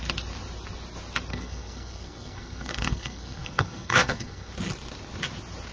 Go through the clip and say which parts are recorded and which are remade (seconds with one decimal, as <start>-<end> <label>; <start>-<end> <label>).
0.0-1.3 recorded; 1.3-4.5 remade; 4.5-5.7 recorded

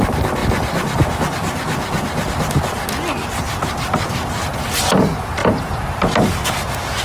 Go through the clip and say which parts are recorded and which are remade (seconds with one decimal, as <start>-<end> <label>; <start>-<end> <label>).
0.0-5.4 recorded; 5.4-6.5 remade; 6.5-7.0 recorded

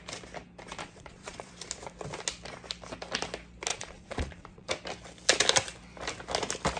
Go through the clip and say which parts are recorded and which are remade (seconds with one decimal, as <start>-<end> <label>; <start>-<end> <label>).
0.0-0.8 recorded; 0.8-1.5 remade; 1.5-3.7 recorded; 3.7-4.7 remade; 4.7-6.8 recorded

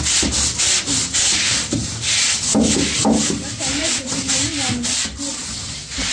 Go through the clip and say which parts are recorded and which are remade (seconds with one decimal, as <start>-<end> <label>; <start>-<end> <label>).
0.0-6.1 recorded

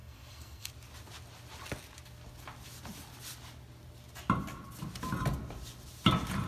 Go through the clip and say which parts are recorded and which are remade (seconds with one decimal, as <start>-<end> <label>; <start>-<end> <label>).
0.0-0.7 remade; 0.7-6.5 recorded

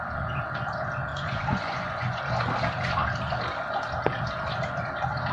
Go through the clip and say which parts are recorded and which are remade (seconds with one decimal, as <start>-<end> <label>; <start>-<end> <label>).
0.0-1.1 recorded; 1.1-2.2 remade; 2.2-5.3 recorded

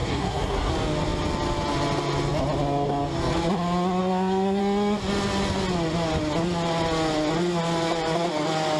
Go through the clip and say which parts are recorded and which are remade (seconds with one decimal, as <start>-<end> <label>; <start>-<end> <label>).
0.0-0.7 remade; 0.7-4.0 recorded; 4.0-4.6 remade; 4.6-8.8 recorded

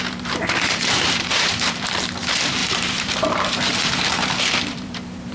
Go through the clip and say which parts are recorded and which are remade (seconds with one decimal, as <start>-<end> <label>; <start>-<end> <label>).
0.0-5.3 remade